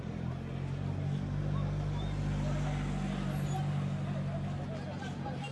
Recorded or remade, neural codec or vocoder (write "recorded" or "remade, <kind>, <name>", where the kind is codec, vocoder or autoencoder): recorded